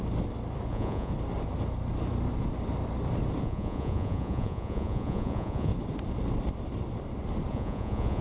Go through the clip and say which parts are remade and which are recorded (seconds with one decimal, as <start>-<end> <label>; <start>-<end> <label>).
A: 0.0-0.7 recorded; 0.7-1.1 remade; 1.1-3.4 recorded; 3.4-5.7 remade; 5.7-7.5 recorded; 7.5-8.2 remade